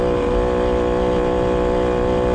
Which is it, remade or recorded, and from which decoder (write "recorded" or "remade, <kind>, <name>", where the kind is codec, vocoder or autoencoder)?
recorded